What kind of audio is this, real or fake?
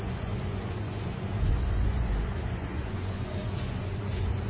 fake